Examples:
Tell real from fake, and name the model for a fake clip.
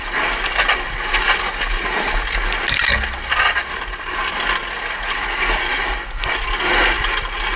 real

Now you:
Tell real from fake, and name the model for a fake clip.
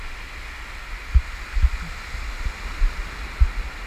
real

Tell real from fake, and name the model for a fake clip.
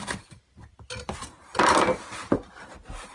fake, vocoder, BigVGAN v2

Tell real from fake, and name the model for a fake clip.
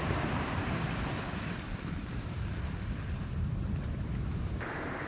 fake, vocoder, BigVGAN v2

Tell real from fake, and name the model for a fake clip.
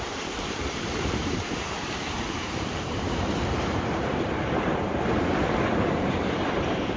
fake, vocoder, BigVGAN v2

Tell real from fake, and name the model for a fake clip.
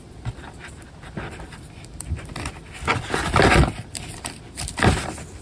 real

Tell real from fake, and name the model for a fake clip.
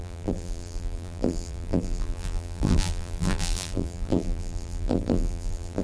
fake, vocoder, BigVGAN v2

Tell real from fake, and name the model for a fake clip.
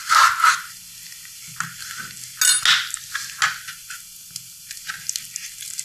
real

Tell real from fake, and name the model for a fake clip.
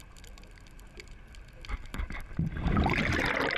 fake, vocoder, BigVGAN v2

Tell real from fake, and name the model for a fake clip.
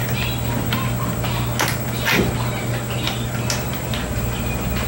real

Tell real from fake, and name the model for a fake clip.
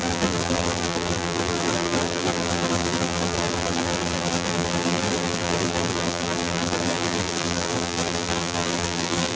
fake, vocoder, BigVGAN v2